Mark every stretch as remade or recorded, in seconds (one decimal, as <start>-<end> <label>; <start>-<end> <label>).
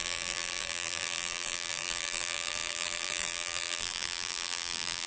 0.0-5.1 remade